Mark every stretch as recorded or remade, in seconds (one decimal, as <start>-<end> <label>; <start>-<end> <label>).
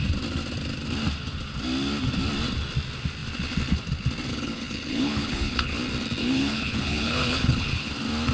0.0-4.3 recorded; 4.3-5.8 remade; 5.8-6.2 recorded; 6.2-7.9 remade; 7.9-8.3 recorded